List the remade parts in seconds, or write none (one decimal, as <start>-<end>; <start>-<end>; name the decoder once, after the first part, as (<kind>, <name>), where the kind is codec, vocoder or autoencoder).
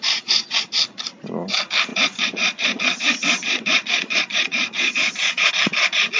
1.9-5.5 (vocoder, Vocos)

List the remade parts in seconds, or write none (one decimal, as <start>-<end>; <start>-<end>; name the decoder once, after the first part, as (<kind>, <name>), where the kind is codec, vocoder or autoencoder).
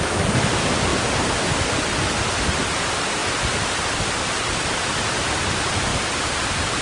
none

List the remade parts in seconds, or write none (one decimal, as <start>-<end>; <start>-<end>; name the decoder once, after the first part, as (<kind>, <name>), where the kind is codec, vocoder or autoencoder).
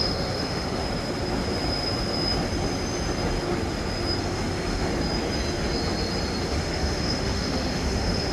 0.0-0.8 (autoencoder, DAC-VAE); 4.2-4.9; 6.6-8.3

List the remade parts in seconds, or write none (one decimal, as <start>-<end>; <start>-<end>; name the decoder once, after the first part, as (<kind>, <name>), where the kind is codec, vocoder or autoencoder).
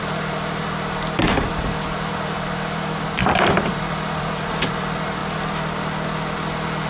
0.0-1.2 (vocoder, BigVGAN v2); 1.8-5.2; 6.5-6.9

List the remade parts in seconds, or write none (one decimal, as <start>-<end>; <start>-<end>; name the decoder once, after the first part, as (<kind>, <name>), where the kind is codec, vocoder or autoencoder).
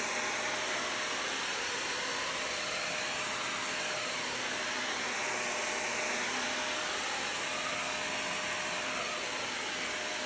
none